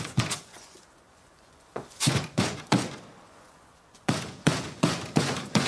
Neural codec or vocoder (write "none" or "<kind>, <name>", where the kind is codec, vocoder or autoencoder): vocoder, Vocos